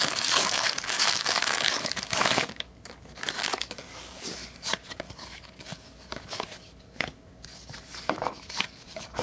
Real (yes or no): no